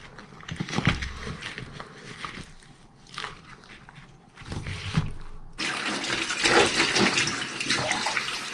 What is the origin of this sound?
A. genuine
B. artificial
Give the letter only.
A